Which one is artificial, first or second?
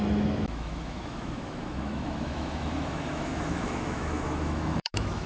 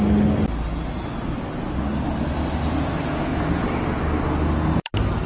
first